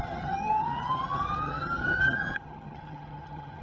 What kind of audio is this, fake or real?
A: fake